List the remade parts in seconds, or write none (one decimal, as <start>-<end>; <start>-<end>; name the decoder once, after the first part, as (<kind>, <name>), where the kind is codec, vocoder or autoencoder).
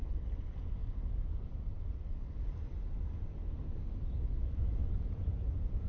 4.8-5.9 (vocoder, Vocos)